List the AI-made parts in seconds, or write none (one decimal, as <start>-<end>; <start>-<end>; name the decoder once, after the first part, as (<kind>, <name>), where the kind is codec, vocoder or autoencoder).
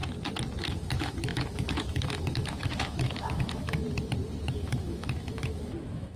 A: 0.6-3.8 (autoencoder, DAC-VAE); 4.5-6.2